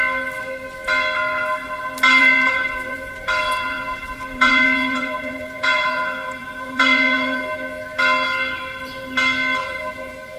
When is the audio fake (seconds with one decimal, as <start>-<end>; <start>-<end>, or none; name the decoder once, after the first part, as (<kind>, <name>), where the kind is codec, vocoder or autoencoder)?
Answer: 2.2-7.4 (vocoder, Vocos); 9.6-10.4